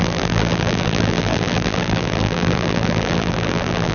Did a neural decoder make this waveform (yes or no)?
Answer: yes